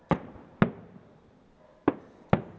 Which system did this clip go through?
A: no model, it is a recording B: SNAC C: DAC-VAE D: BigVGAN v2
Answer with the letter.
A